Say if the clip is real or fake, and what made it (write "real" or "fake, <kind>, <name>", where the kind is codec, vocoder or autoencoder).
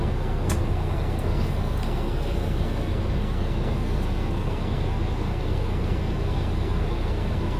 fake, codec, SNAC